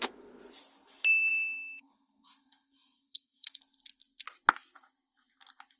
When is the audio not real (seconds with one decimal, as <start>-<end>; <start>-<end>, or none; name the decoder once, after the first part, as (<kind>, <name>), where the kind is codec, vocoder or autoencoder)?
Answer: 1.3-3.6 (autoencoder, DAC-VAE)